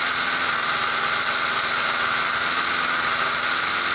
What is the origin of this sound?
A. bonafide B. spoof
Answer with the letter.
A